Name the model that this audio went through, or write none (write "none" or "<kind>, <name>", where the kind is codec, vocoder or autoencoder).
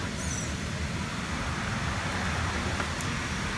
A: none